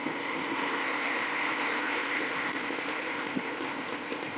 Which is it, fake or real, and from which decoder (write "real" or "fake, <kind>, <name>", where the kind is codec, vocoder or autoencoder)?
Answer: fake, codec, ZipCodec